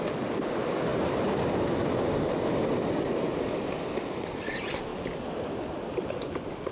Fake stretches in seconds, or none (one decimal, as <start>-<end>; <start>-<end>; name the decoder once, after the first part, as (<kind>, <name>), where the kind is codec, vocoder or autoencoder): none